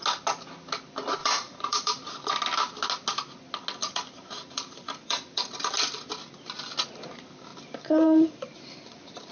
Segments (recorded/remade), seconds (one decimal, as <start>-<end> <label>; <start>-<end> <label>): 0.0-1.2 recorded; 1.2-2.3 remade; 2.3-3.8 recorded; 3.8-5.7 remade; 5.7-7.5 recorded; 7.5-9.3 remade